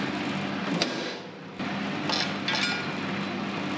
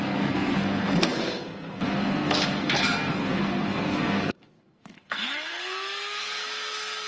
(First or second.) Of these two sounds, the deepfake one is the second